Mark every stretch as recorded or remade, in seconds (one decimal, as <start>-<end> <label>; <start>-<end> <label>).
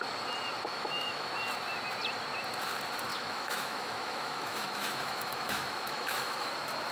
0.0-0.7 recorded; 0.7-1.3 remade; 1.3-3.1 recorded; 3.1-6.5 remade; 6.5-6.9 recorded